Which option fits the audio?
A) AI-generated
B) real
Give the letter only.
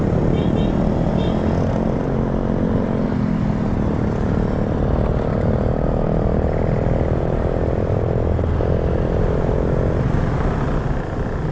B